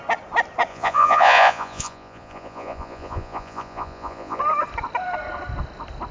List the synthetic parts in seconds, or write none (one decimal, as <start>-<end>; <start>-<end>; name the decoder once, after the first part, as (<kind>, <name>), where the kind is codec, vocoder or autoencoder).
0.7-4.4 (vocoder, Vocos)